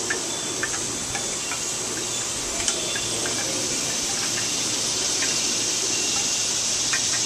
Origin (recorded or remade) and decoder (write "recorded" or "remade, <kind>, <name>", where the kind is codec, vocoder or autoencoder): remade, vocoder, BigVGAN v2